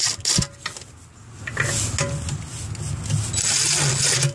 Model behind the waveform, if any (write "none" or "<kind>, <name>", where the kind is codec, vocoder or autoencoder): none